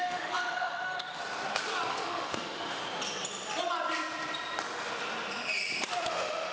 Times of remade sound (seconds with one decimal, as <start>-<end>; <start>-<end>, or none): 0.0-1.2; 1.9-2.8; 6.1-6.5